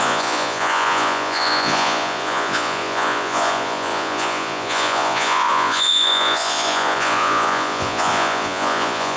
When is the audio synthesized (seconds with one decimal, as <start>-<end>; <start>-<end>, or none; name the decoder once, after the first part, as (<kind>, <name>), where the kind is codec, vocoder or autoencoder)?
0.0-9.2 (vocoder, Vocos)